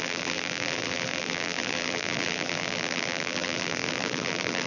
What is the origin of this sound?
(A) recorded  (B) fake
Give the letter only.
B